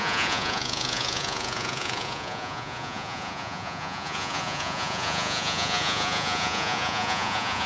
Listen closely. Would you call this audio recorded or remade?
remade